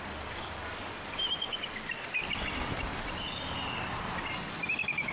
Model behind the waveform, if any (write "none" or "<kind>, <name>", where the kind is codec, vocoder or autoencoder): none